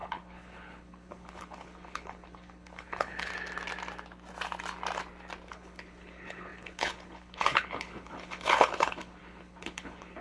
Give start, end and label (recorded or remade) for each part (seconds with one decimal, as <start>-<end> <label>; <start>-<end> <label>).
0.0-3.3 remade; 3.3-5.5 recorded; 5.5-10.2 remade